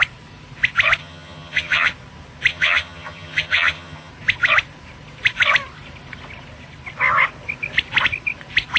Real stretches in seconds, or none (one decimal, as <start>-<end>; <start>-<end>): 0.0-1.0; 1.9-2.5; 4.1-8.8